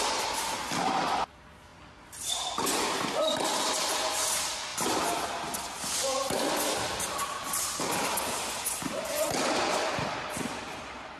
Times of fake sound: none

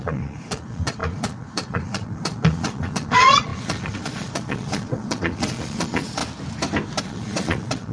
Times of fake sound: 0.0-6.2 (vocoder, Vocos); 7.0-7.9